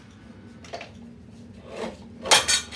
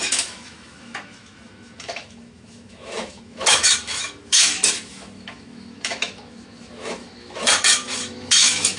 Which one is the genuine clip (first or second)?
first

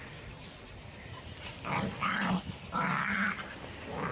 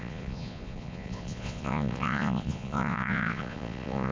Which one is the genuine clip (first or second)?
first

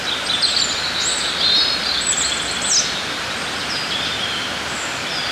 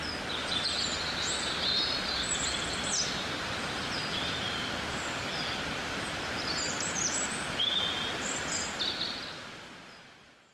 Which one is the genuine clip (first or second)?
first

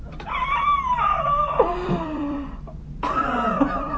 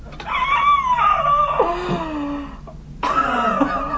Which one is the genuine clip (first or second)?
second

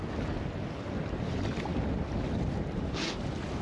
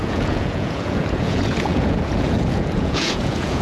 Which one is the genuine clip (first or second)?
first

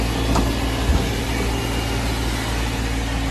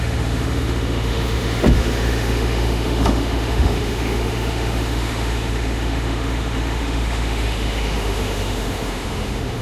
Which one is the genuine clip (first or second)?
first